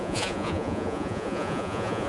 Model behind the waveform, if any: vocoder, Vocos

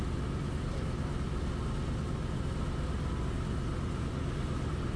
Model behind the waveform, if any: none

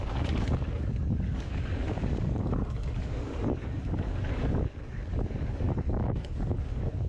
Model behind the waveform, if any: codec, DAC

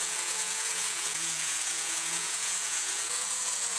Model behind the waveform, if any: vocoder, Vocos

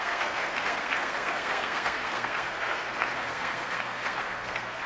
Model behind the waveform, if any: codec, SNAC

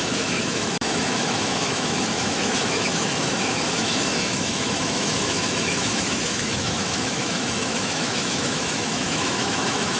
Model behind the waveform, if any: autoencoder, DAC-VAE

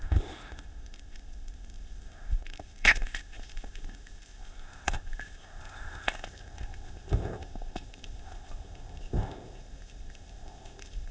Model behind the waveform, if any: codec, ZipCodec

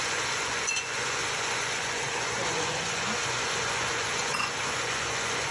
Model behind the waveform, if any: vocoder, Vocos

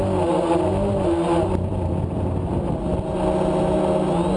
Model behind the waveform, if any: none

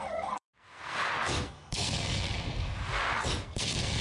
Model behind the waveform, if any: codec, SNAC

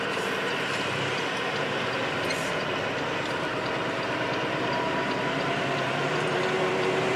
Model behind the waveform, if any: vocoder, BigVGAN v2